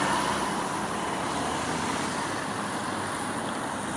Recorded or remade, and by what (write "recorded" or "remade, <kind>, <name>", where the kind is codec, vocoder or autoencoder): recorded